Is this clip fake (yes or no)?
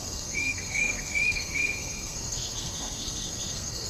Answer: yes